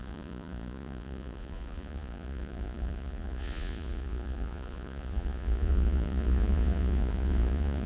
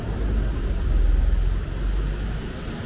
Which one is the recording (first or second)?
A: second